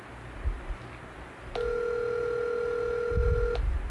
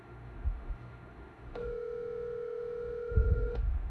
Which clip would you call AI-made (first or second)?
second